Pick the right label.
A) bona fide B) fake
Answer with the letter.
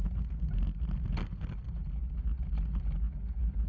A